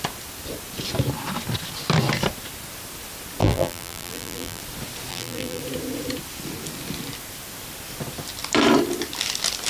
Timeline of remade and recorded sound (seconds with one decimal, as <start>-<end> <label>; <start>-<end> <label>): 0.0-3.4 recorded; 3.4-4.6 remade; 4.6-5.1 recorded; 5.1-5.6 remade; 5.6-9.7 recorded